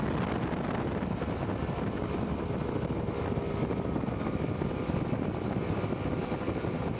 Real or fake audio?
real